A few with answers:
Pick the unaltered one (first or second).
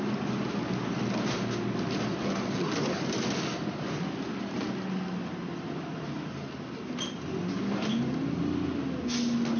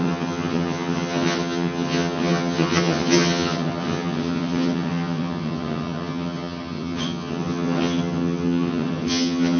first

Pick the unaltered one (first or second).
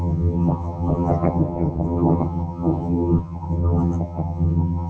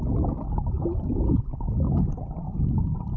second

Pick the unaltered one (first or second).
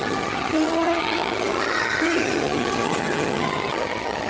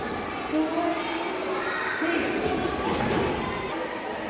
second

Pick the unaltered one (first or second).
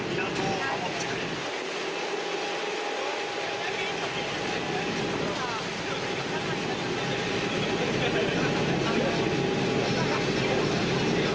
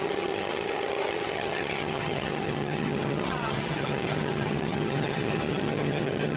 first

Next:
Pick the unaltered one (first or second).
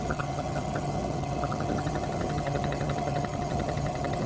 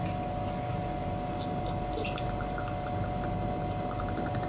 second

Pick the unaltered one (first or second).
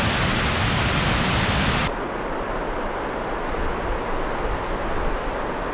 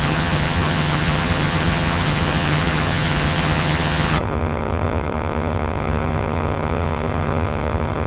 first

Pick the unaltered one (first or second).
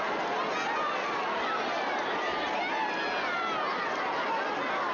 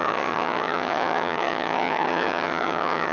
first